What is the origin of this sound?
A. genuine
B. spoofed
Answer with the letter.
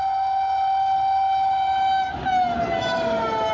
A